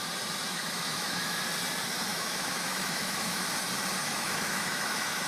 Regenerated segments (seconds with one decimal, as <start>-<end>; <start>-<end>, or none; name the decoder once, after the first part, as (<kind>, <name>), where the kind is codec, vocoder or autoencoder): 0.5-1.4 (autoencoder, DAC-VAE); 2.1-3.5; 4.0-5.3